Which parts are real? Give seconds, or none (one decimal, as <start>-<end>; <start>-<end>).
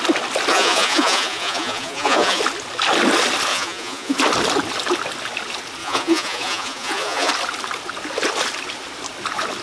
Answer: 0.0-0.5; 2.4-3.5; 4.2-5.8; 7.3-9.6